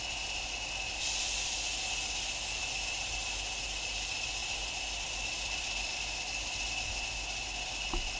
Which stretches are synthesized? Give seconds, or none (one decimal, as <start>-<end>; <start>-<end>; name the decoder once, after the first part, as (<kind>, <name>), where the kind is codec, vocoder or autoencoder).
4.4-6.0 (vocoder, BigVGAN v2)